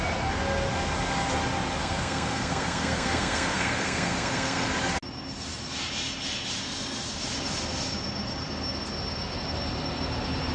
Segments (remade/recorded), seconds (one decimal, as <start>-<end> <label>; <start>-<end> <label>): 0.0-1.8 recorded; 1.8-4.7 remade; 4.7-10.5 recorded